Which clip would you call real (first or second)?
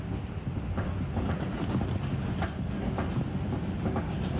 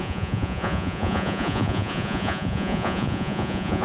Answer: first